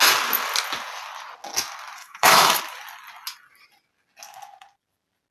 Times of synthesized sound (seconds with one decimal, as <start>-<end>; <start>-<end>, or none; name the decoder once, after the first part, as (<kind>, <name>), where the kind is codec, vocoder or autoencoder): 2.0-2.6 (autoencoder, DAC-VAE)